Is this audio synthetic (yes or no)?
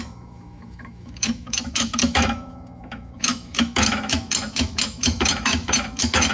yes